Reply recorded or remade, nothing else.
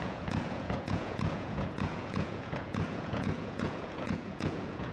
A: remade